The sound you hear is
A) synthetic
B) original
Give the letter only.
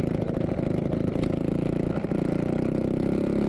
B